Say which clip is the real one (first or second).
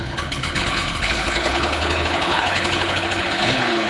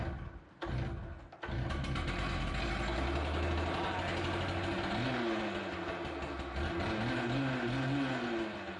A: second